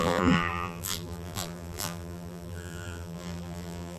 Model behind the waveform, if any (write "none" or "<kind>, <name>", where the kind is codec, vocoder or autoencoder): vocoder, BigVGAN v2